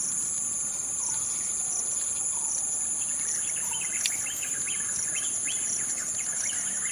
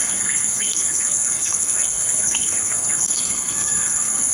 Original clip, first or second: first